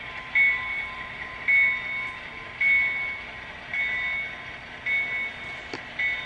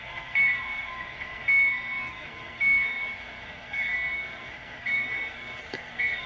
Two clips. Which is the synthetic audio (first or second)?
second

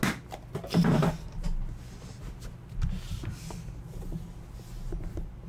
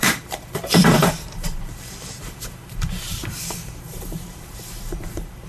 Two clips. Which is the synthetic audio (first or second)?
second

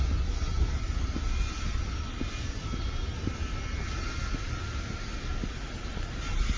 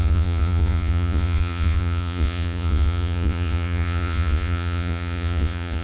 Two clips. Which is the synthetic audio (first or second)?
second